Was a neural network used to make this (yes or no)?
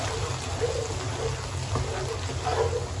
no